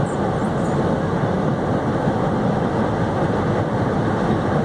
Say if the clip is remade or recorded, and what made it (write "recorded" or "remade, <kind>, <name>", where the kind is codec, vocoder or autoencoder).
recorded